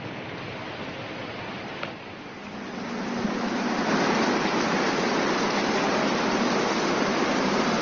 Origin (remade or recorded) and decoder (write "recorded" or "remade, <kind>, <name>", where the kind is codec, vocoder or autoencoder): recorded